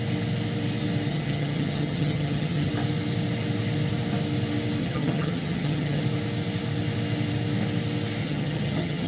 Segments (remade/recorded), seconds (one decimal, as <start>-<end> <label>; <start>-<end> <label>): 0.0-1.1 recorded; 1.1-2.7 remade; 2.7-4.8 recorded; 4.8-6.0 remade; 6.0-8.2 recorded; 8.2-9.1 remade